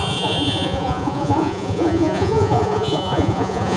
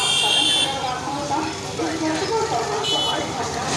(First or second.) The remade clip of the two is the first